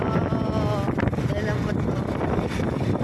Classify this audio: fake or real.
real